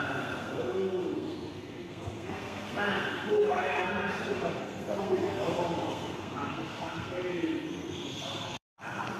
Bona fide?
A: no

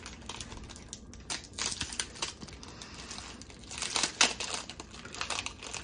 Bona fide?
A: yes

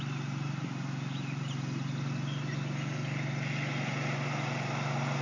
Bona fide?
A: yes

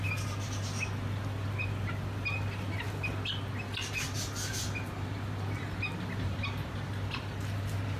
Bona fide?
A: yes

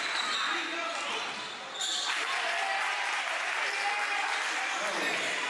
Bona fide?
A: yes